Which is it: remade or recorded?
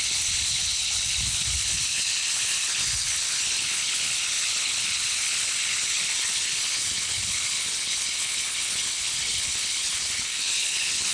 remade